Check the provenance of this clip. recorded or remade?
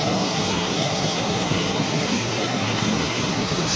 remade